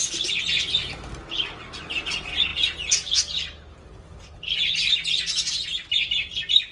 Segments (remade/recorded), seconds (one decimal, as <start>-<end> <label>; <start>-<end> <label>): 0.0-6.7 recorded